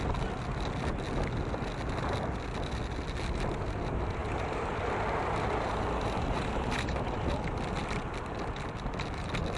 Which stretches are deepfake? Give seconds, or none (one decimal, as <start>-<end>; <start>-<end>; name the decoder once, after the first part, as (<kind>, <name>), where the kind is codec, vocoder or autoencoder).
4.2-7.0 (vocoder, BigVGAN v2)